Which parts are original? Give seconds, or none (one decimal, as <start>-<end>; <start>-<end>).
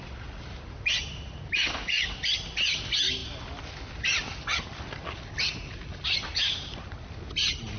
0.0-7.8